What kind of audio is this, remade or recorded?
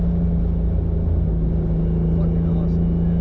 recorded